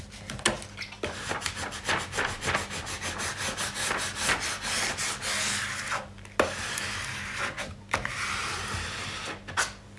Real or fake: real